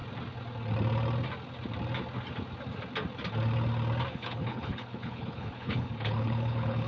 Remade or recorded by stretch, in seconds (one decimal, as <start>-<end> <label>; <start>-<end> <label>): 0.0-4.1 recorded; 4.1-6.9 remade